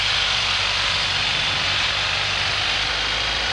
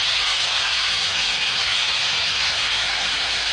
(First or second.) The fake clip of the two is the second